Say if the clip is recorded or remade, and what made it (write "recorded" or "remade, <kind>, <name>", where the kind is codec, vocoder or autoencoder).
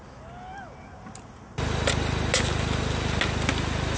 recorded